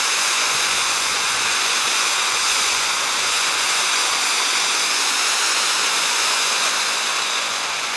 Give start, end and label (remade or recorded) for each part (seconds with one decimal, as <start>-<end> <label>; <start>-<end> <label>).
0.0-8.0 remade